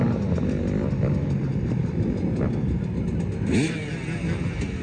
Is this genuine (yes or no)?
yes